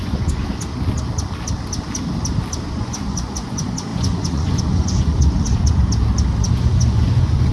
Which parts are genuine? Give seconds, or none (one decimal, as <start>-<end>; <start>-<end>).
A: 0.4-2.7; 5.8-6.5